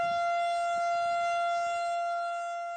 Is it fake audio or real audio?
real